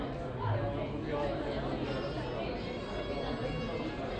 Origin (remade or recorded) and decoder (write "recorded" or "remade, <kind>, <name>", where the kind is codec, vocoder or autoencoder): recorded